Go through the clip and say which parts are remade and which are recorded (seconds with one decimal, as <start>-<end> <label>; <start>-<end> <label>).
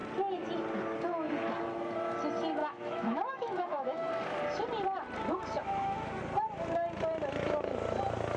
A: 0.0-2.6 recorded; 2.6-4.1 remade; 4.1-5.6 recorded; 5.6-6.2 remade; 6.2-8.4 recorded